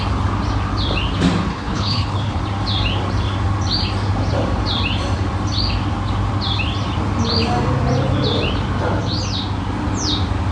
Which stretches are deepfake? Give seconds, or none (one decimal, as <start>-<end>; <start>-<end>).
1.5-2.4